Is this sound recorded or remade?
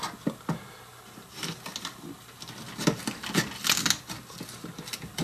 recorded